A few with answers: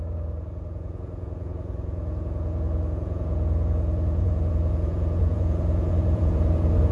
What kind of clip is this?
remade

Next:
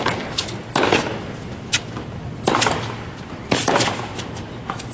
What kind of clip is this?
recorded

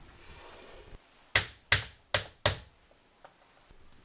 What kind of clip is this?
recorded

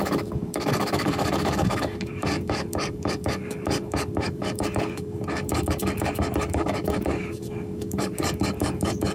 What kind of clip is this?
remade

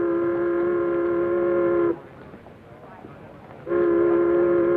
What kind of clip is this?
recorded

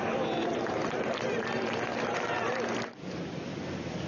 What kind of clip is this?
remade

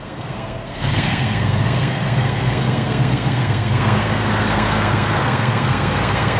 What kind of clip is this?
remade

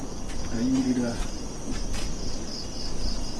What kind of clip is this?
recorded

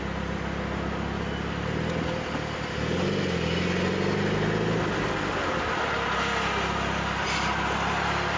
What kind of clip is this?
recorded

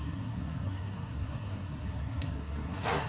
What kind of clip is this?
remade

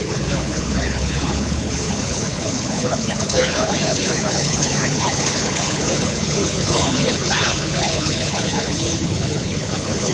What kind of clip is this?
remade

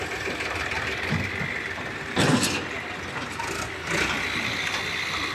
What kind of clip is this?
recorded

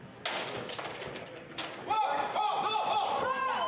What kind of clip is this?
recorded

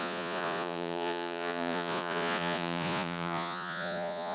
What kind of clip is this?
remade